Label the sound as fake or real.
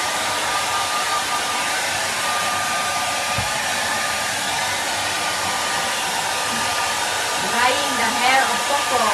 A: fake